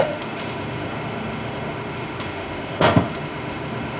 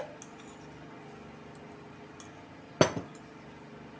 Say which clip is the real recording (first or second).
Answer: second